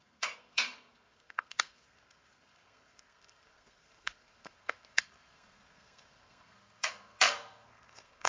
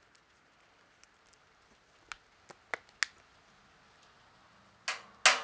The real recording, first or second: second